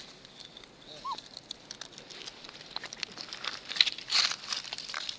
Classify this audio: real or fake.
real